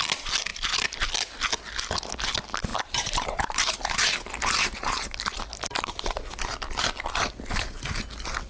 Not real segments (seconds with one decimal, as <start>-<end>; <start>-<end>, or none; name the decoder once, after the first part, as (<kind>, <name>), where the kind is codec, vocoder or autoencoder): 2.7-3.9 (vocoder, BigVGAN v2)